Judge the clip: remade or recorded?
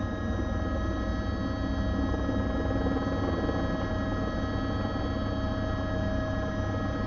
recorded